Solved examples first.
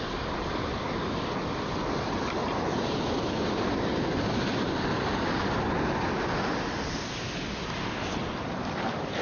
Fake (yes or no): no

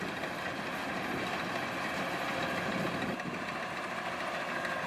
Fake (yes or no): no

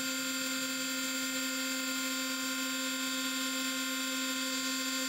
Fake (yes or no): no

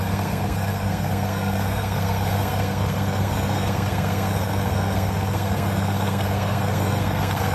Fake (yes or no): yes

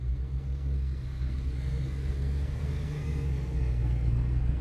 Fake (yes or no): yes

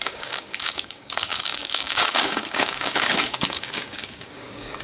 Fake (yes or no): yes